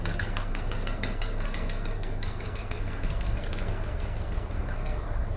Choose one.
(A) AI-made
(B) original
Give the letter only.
A